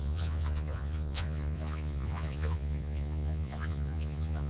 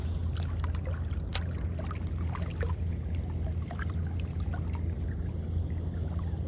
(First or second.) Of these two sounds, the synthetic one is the first